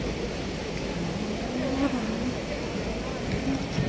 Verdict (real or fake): real